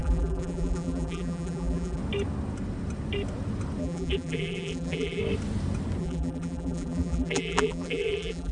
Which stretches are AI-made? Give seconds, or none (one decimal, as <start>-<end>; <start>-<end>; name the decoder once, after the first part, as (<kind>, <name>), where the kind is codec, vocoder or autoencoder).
0.0-2.0 (vocoder, BigVGAN v2); 3.8-5.2; 6.0-8.5